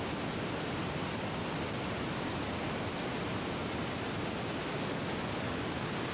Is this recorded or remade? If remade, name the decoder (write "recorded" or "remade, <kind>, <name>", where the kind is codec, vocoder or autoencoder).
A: recorded